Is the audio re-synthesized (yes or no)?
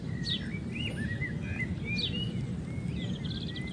no